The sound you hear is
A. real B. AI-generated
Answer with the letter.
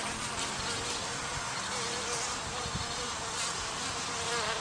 A